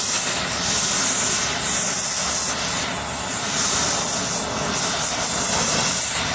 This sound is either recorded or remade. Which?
recorded